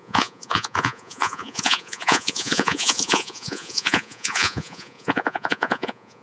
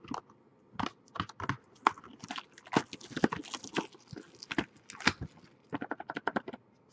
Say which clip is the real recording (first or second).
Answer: second